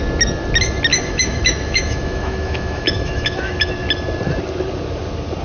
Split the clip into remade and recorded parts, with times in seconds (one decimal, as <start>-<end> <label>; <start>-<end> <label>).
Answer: 0.0-0.9 recorded; 0.9-3.7 remade; 3.7-5.4 recorded